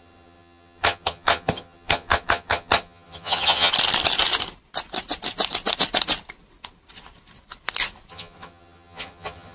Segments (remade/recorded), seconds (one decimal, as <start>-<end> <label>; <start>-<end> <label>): 0.0-3.7 remade; 3.7-8.1 recorded; 8.1-9.5 remade